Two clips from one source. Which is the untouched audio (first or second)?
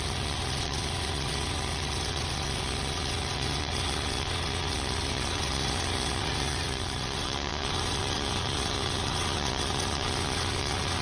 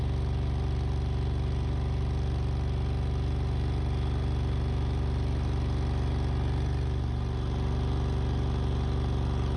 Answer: second